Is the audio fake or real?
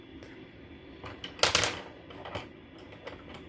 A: real